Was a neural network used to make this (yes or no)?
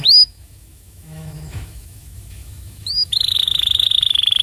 yes